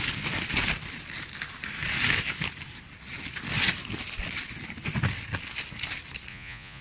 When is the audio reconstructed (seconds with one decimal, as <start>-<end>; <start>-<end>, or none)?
6.3-6.8